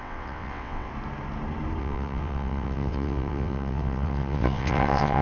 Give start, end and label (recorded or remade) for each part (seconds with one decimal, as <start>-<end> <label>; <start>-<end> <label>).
0.0-0.9 remade; 0.9-1.8 recorded; 1.8-5.2 remade